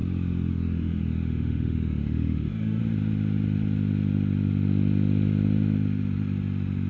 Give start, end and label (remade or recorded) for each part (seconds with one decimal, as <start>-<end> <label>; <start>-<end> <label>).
0.0-0.5 recorded; 0.5-2.8 remade; 2.8-6.9 recorded

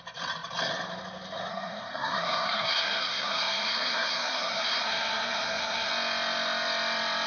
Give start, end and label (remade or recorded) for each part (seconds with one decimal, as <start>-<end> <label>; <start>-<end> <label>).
0.0-1.5 recorded; 1.5-5.9 remade; 5.9-7.3 recorded

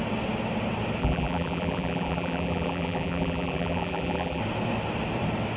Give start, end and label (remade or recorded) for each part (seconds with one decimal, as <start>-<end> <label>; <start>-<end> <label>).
0.0-1.0 recorded; 1.0-4.4 remade; 4.4-5.6 recorded

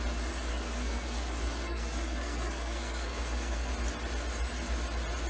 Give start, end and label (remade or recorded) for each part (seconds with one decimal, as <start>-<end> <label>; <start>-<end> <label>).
0.0-0.5 recorded; 0.5-3.7 remade; 3.7-5.3 recorded

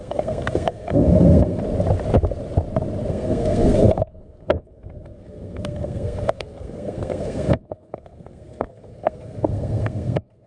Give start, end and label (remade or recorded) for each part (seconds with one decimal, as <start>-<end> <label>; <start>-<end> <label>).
0.0-1.6 remade; 1.6-3.1 recorded; 3.1-10.5 remade

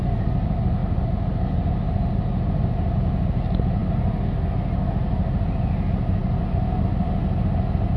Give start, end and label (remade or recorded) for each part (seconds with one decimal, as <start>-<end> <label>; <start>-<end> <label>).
0.0-8.0 recorded

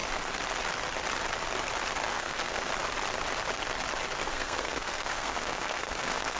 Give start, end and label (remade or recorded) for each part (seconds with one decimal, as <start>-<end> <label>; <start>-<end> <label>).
0.0-2.1 recorded; 2.1-2.7 remade; 2.7-4.3 recorded; 4.3-6.4 remade

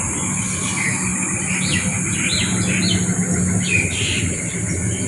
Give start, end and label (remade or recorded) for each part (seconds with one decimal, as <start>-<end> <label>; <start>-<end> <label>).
0.0-5.1 recorded